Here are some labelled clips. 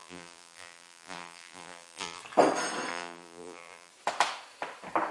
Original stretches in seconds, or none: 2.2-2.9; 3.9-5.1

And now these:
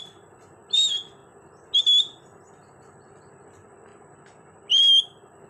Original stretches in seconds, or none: 0.0-5.5

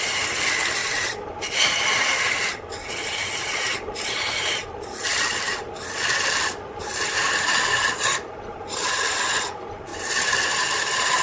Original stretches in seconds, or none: 9.9-10.5

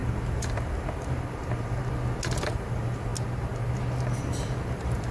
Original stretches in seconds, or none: 1.8-2.5; 3.1-4.2

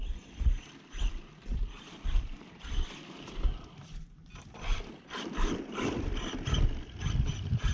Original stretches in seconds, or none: 0.0-1.5; 6.1-7.7